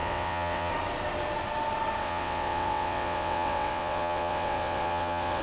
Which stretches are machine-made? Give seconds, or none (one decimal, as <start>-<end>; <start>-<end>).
0.0-0.7; 2.0-5.4